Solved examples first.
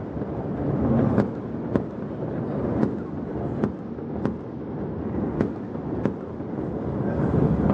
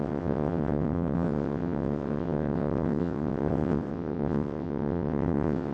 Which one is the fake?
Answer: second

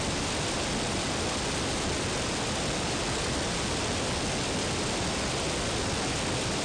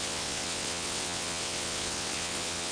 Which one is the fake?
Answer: second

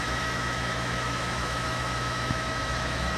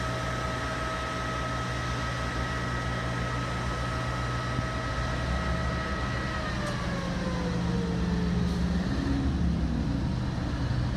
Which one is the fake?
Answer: first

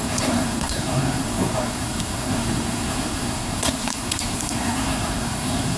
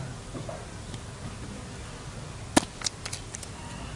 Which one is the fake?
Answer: first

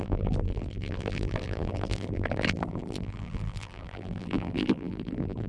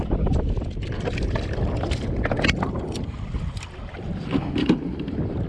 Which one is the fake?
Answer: first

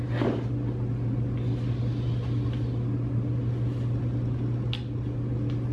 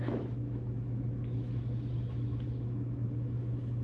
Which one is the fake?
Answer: second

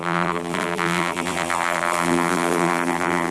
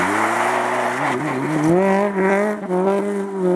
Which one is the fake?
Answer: first